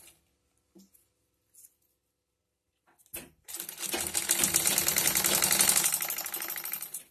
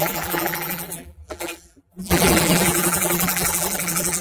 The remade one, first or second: second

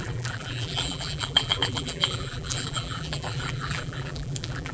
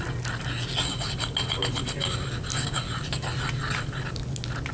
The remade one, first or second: first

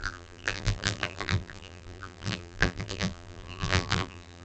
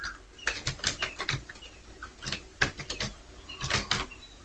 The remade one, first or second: first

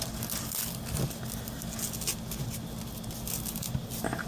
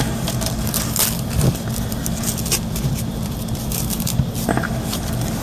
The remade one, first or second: second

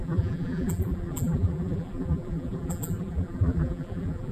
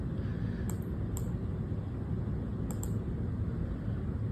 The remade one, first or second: first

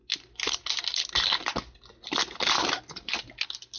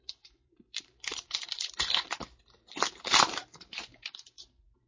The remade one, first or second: second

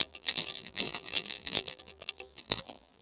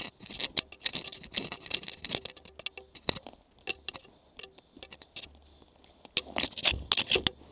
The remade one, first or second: first